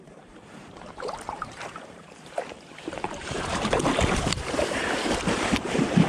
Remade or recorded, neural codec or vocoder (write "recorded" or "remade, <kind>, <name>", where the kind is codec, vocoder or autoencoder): remade, vocoder, BigVGAN v2